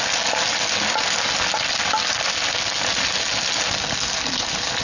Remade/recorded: recorded